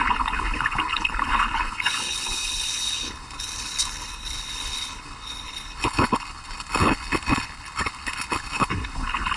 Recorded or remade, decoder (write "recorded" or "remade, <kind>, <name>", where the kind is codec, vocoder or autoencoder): remade, codec, HILCodec